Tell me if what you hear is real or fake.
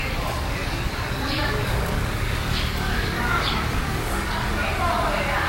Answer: fake